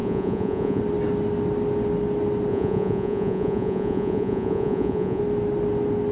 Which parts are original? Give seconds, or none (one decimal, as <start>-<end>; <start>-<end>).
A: 0.8-2.5; 5.2-6.1